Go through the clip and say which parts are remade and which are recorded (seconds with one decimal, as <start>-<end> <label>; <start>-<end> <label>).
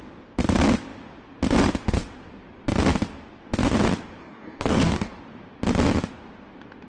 0.0-4.2 recorded; 4.2-5.2 remade; 5.2-6.9 recorded